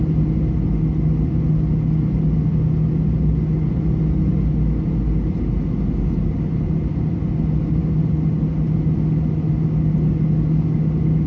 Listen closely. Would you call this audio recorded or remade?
recorded